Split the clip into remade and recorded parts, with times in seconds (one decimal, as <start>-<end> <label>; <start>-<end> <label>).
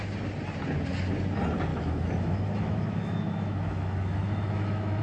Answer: 0.0-1.7 recorded; 1.7-5.0 remade